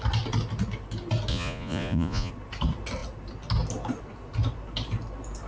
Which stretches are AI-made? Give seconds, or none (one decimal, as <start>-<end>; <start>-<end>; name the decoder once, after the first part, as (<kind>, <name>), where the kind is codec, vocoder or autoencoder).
1.3-2.3 (vocoder, Vocos)